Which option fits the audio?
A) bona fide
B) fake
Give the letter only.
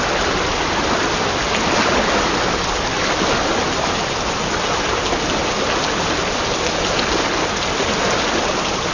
A